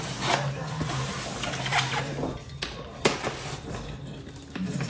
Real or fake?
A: real